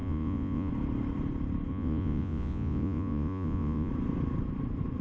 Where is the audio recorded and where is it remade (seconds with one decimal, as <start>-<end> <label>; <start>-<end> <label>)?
0.0-0.7 remade; 0.7-1.7 recorded; 1.7-3.9 remade; 3.9-5.0 recorded